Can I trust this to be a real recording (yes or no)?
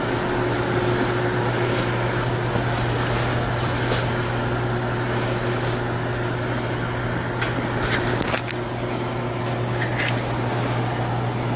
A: yes